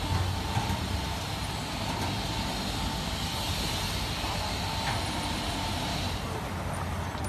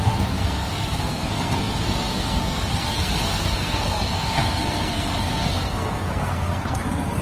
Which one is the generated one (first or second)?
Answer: second